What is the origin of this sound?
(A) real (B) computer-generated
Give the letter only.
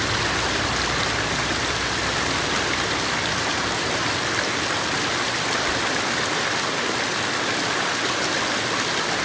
A